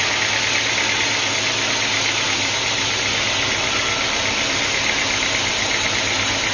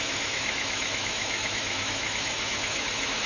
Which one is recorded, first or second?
first